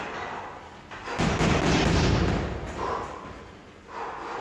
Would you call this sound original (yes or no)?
yes